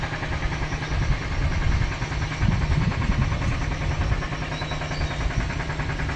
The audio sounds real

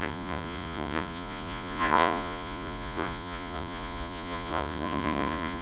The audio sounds fake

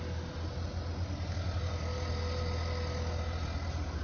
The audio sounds real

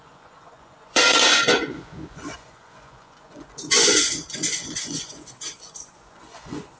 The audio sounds fake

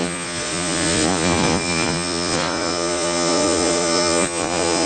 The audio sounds fake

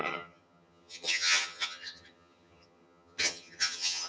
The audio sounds fake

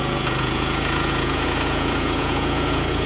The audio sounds fake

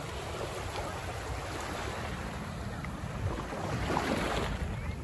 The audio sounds real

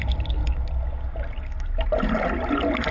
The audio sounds real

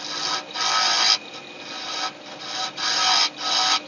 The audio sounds real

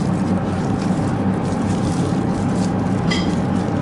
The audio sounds fake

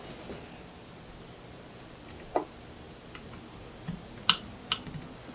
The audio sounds real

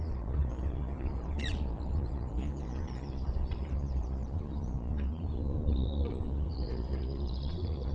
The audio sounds fake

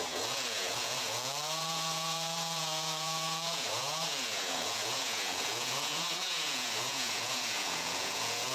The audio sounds fake